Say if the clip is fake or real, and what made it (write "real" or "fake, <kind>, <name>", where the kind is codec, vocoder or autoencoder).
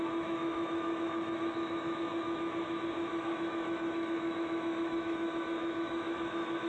fake, autoencoder, DAC-VAE